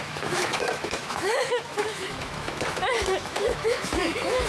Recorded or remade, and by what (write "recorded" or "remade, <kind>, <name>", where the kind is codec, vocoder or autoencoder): remade, autoencoder, DAC-VAE